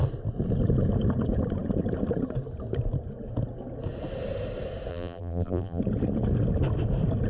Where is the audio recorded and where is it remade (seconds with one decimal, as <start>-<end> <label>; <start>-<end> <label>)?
0.0-4.9 recorded; 4.9-5.8 remade; 5.8-7.3 recorded